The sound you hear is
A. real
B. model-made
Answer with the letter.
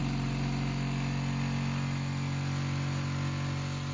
A